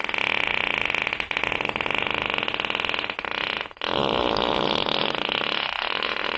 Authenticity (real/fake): real